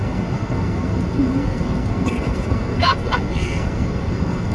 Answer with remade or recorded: remade